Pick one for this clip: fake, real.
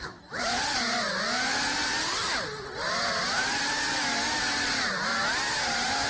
real